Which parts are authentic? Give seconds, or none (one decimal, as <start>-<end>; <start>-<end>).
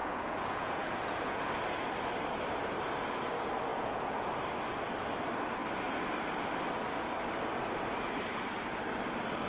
1.6-3.7; 4.3-9.5